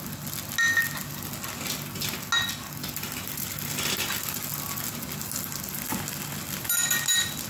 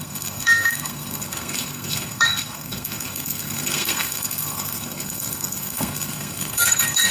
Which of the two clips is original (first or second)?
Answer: first